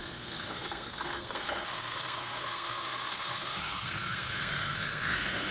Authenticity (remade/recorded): remade